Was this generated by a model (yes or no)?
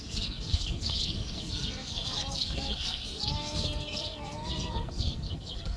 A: yes